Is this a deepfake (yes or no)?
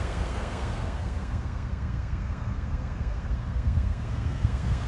yes